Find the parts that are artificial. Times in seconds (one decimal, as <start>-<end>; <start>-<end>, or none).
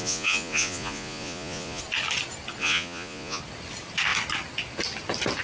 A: 0.0-1.8; 2.6-3.4